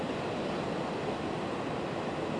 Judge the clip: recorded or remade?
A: recorded